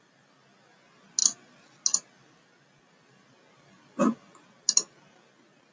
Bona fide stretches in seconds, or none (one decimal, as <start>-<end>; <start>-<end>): 0.0-5.7